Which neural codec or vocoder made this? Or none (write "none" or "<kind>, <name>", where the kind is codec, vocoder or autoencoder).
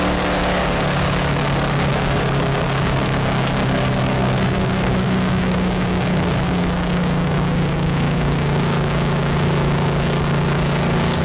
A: codec, DAC